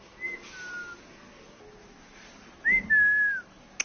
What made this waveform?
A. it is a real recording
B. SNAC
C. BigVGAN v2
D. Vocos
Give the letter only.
A